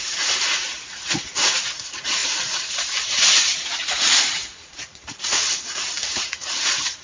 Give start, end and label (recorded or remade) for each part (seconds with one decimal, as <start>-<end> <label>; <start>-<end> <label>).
0.0-3.5 remade; 3.5-4.2 recorded; 4.2-7.0 remade